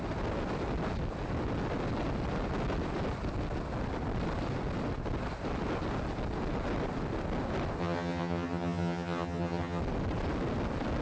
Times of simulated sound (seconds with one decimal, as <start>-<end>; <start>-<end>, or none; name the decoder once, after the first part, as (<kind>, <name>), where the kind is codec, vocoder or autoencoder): 7.8-9.8 (vocoder, HiFi-GAN)